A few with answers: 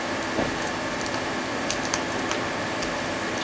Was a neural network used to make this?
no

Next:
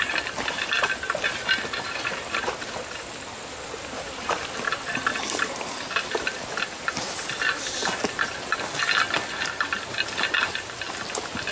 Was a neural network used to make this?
no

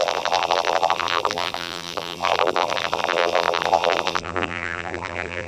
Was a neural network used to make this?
yes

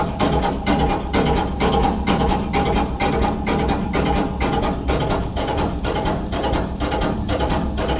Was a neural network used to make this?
yes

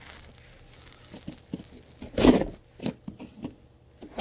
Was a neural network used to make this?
no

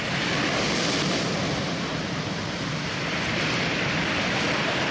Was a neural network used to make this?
yes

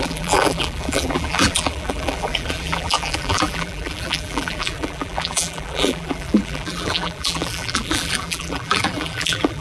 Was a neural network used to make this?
yes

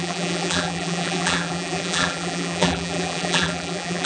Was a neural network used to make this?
yes